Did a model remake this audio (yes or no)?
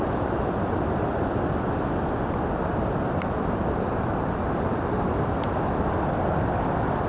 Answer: no